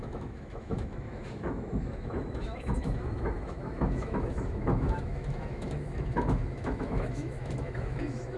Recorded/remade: remade